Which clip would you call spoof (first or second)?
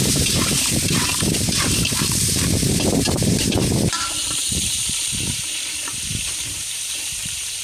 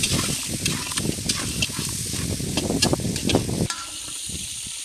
first